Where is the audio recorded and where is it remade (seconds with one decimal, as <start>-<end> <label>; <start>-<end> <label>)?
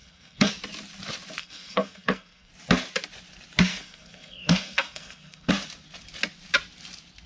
0.0-0.5 remade; 0.5-1.4 recorded; 1.4-2.5 remade; 2.5-3.7 recorded; 3.7-5.5 remade; 5.5-7.3 recorded